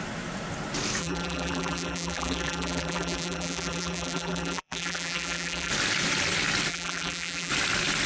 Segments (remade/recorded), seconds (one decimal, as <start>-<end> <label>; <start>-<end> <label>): 0.0-1.0 recorded; 1.0-5.7 remade; 5.7-6.7 recorded; 6.7-7.5 remade; 7.5-8.1 recorded